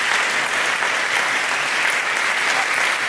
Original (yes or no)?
yes